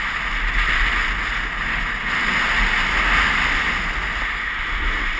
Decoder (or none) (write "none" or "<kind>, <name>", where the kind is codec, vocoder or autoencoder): none